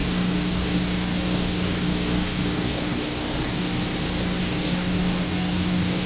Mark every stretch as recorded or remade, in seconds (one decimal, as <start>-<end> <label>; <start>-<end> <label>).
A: 0.0-3.7 remade; 3.7-4.4 recorded; 4.4-6.1 remade